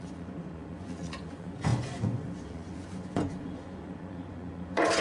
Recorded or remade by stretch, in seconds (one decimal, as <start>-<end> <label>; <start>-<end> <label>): 0.0-5.0 remade

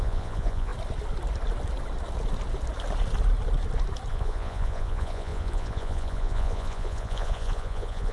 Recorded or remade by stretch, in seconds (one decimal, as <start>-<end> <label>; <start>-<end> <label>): 0.0-0.7 remade; 0.7-4.1 recorded; 4.1-8.1 remade

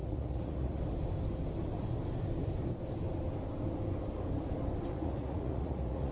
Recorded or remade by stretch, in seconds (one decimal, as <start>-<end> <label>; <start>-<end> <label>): 0.0-0.8 remade; 0.8-4.9 recorded; 4.9-6.1 remade

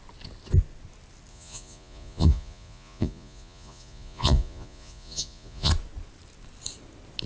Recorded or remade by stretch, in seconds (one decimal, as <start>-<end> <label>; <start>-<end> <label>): 0.0-1.3 recorded; 1.3-5.7 remade; 5.7-7.3 recorded

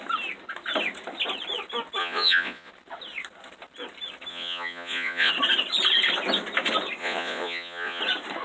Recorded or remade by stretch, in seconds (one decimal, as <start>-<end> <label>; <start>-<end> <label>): 0.0-2.0 recorded; 2.0-2.7 remade; 2.7-4.3 recorded; 4.3-5.3 remade; 5.3-7.0 recorded; 7.0-8.0 remade; 8.0-8.4 recorded

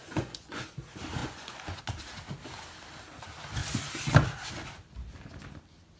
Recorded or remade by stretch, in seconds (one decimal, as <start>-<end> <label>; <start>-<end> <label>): 0.0-0.6 remade; 0.6-1.2 recorded; 1.2-1.8 remade; 1.8-6.0 recorded

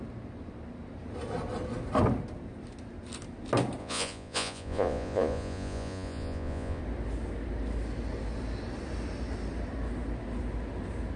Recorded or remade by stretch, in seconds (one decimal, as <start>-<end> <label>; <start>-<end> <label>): 0.0-3.8 recorded; 3.8-6.8 remade; 6.8-11.2 recorded